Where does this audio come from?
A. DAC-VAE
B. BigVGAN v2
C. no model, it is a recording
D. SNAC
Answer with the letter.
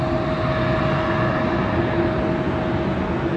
C